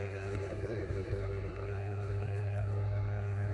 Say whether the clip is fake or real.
fake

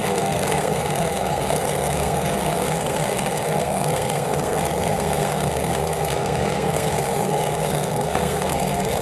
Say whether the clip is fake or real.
fake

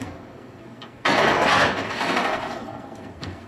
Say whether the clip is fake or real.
fake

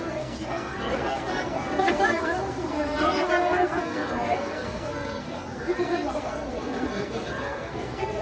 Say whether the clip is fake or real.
fake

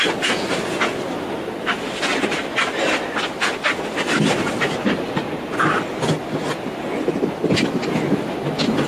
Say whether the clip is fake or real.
real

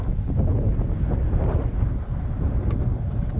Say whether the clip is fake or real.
real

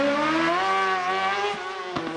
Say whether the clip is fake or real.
real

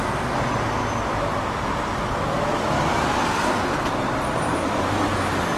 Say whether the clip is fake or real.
real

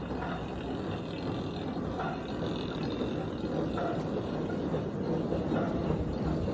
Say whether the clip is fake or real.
real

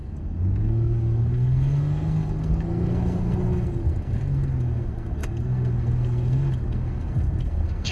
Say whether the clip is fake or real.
fake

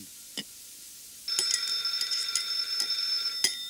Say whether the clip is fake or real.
real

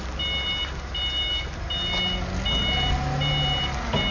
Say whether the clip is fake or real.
real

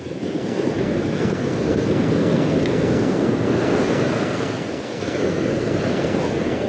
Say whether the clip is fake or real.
fake